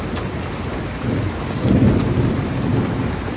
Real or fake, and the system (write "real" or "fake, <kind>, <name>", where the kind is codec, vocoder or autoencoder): real